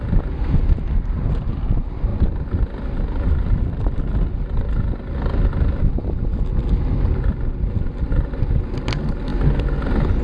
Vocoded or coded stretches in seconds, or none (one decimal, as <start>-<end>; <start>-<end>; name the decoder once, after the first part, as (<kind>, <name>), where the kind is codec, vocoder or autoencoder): none

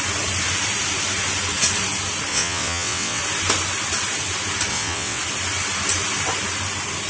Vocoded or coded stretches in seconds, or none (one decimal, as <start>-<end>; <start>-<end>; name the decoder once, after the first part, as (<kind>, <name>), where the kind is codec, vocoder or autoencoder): 2.3-3.2 (vocoder, WaveNeXt); 4.7-5.2

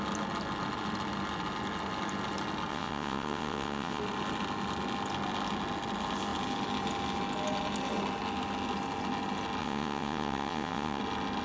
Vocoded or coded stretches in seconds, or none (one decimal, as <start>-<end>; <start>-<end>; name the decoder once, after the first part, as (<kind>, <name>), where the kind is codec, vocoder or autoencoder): 2.7-4.0 (vocoder, WaveNeXt); 9.6-11.0

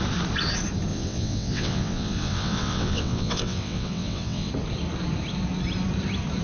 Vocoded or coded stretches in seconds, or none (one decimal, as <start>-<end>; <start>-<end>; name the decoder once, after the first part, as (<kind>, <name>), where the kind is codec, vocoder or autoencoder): 0.9-4.5 (vocoder, WaveNeXt)

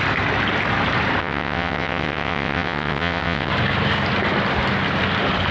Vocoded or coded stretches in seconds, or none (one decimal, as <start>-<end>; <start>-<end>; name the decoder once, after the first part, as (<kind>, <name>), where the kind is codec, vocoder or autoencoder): 1.2-3.5 (vocoder, WaveNeXt)

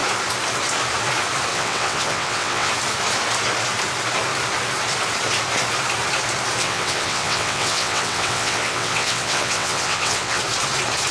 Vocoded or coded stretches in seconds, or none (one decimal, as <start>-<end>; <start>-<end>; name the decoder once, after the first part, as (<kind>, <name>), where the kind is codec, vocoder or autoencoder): 1.5-2.7 (vocoder, WaveNeXt); 6.6-10.4